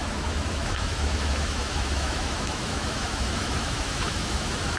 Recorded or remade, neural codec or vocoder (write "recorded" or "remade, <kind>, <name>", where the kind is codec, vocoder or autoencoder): remade, autoencoder, DAC-VAE